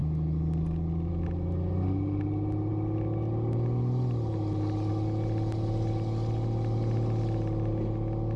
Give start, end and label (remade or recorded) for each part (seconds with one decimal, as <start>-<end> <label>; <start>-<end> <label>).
0.0-8.4 recorded

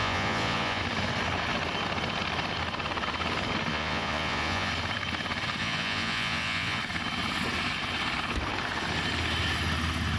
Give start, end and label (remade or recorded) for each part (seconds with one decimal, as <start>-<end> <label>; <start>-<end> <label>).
0.0-0.8 remade; 0.8-3.7 recorded; 3.7-4.7 remade; 4.7-5.6 recorded; 5.6-6.8 remade; 6.8-10.2 recorded

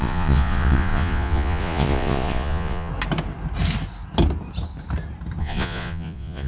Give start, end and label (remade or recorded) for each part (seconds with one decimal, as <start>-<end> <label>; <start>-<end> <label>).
0.0-2.9 remade; 2.9-5.4 recorded; 5.4-6.5 remade

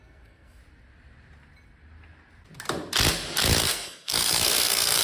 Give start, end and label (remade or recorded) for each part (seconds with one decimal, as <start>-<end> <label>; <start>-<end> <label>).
0.0-0.6 remade; 0.6-3.6 recorded; 3.6-5.0 remade

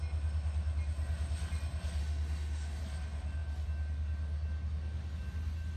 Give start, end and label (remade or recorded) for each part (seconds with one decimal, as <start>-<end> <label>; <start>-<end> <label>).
0.0-2.0 recorded; 2.0-2.8 remade; 2.8-5.8 recorded

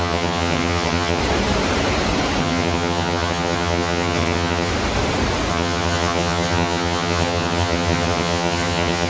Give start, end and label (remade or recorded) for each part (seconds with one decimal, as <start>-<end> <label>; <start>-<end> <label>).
0.0-1.2 remade; 1.2-2.4 recorded; 2.4-4.7 remade; 4.7-5.5 recorded; 5.5-9.1 remade